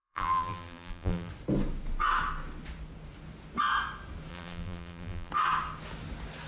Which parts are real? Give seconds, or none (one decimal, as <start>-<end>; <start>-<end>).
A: 1.3-4.3; 5.3-6.5